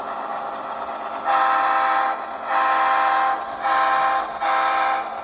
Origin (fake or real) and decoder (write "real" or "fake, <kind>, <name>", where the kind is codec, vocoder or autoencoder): real